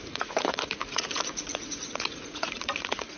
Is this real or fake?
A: fake